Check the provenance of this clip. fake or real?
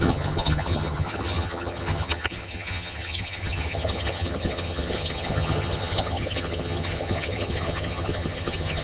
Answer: fake